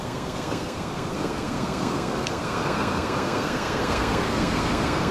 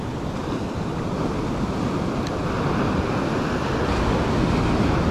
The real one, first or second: second